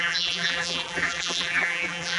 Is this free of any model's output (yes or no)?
no